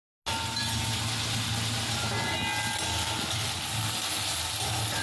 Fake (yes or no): no